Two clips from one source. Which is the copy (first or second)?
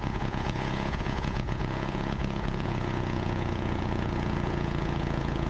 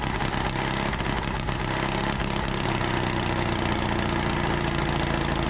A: first